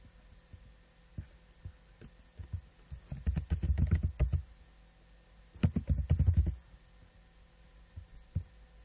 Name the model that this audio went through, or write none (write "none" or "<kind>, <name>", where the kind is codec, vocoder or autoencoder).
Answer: none